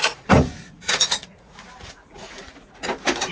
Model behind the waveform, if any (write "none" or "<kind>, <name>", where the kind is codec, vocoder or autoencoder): vocoder, Vocos